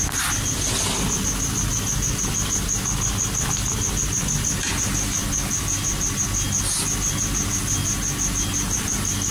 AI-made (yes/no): no